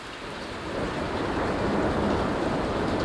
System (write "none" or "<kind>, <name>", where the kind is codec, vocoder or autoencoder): vocoder, BigVGAN v2